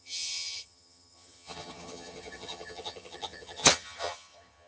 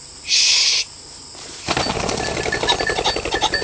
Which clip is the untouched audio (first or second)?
second